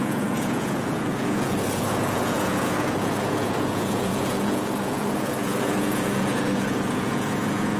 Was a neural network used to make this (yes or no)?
yes